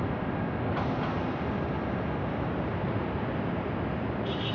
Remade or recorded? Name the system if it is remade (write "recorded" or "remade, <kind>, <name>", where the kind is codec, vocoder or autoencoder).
recorded